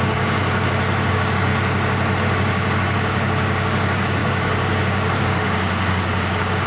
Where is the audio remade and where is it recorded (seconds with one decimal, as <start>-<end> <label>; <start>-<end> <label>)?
0.0-0.4 remade; 0.4-1.1 recorded; 1.1-1.5 remade; 1.5-2.2 recorded; 2.2-6.7 remade